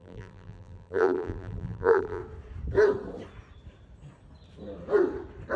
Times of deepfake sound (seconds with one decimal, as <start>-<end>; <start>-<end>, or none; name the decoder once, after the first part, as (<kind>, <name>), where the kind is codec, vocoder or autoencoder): 0.0-2.2 (vocoder, BigVGAN v2)